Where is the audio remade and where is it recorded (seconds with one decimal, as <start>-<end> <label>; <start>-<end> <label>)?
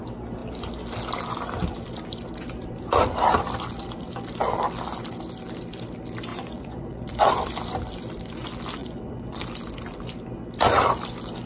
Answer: 0.0-6.3 recorded; 6.3-7.3 remade; 7.3-8.8 recorded; 8.8-9.4 remade; 9.4-11.5 recorded